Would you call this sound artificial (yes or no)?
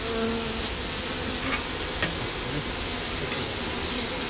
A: no